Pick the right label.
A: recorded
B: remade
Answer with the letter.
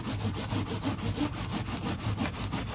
A